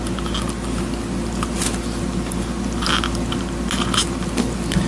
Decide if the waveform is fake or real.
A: real